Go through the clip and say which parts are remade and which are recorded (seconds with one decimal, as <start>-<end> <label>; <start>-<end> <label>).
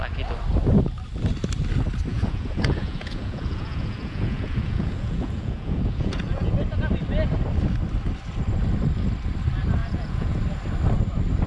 0.0-2.1 recorded; 2.1-6.5 remade; 6.5-9.8 recorded; 9.8-10.4 remade; 10.4-11.5 recorded